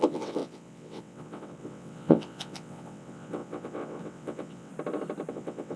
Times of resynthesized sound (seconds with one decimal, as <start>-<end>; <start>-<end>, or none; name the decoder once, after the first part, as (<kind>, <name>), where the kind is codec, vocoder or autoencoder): 0.0-4.7 (vocoder, WaveNeXt); 5.3-5.8